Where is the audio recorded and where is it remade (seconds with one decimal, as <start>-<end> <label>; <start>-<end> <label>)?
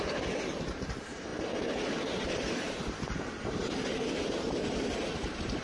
0.0-1.3 remade; 1.3-2.3 recorded; 2.3-5.6 remade